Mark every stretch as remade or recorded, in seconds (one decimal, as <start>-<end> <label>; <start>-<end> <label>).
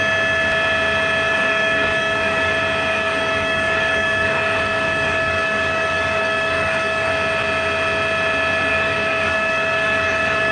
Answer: 0.0-1.3 recorded; 1.3-2.5 remade; 2.5-2.9 recorded; 2.9-7.1 remade; 7.1-8.7 recorded; 8.7-10.5 remade